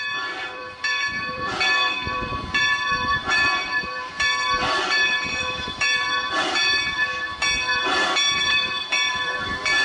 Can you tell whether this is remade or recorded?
remade